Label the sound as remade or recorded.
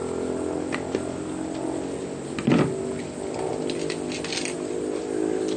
recorded